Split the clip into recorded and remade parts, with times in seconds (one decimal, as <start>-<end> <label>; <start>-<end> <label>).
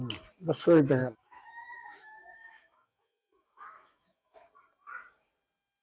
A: 0.0-1.0 recorded; 1.0-4.5 remade; 4.5-5.8 recorded